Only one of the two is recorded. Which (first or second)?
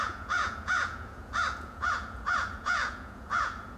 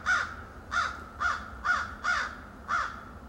second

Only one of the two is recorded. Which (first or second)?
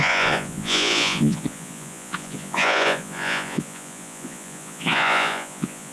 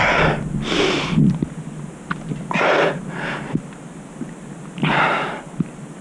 second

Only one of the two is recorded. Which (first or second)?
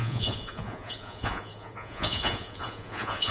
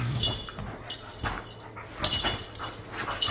second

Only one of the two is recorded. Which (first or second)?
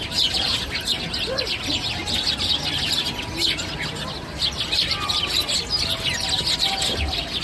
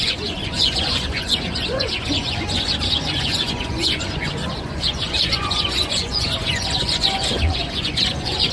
first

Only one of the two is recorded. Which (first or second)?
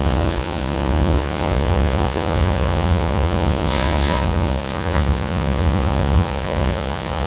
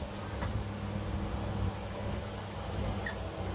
second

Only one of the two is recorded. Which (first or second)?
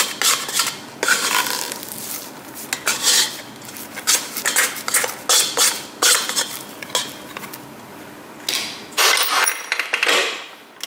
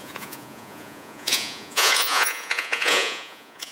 first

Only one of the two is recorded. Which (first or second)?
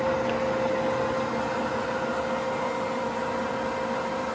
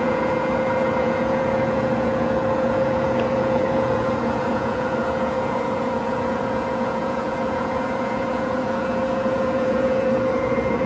first